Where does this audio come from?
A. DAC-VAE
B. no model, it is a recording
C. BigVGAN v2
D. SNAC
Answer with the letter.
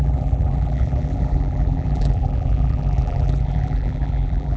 C